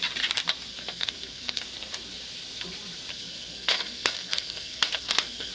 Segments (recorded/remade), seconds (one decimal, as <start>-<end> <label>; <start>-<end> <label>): 0.0-0.7 recorded; 0.7-1.6 remade; 1.6-3.1 recorded; 3.1-5.5 remade